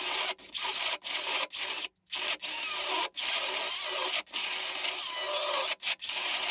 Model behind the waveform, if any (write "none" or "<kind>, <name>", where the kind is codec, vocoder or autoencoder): none